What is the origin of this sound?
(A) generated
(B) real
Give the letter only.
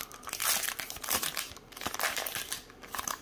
A